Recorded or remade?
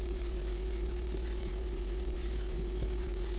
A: remade